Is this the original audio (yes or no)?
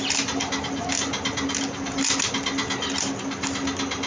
yes